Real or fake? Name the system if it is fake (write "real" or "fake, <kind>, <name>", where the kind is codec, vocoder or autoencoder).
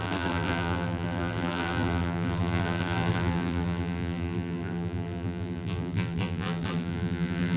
fake, vocoder, BigVGAN v2